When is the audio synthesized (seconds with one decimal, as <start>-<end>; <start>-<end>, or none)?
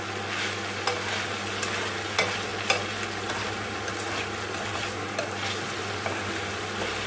none